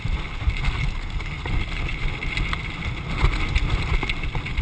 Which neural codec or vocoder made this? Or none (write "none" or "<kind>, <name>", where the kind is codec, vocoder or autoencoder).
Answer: none